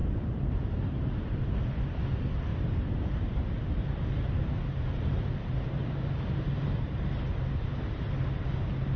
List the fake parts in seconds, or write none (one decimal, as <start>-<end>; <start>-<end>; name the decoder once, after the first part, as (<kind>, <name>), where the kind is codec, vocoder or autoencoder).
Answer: 0.0-1.0 (vocoder, BigVGAN v2); 2.5-7.2